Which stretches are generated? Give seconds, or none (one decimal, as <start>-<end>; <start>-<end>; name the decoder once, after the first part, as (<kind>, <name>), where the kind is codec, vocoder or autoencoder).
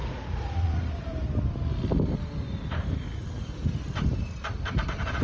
0.0-0.9 (vocoder, Vocos)